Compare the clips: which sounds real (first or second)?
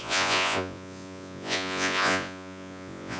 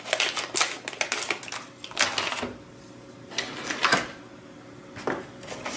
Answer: second